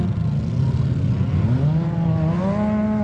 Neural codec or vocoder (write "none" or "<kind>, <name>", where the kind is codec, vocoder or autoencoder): none